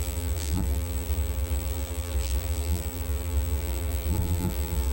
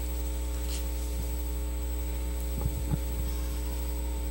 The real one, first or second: second